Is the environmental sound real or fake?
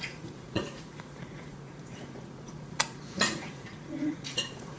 fake